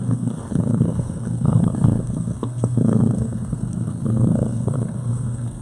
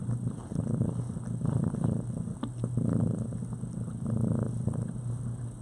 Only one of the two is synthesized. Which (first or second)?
first